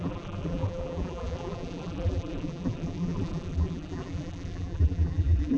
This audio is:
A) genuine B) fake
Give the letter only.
B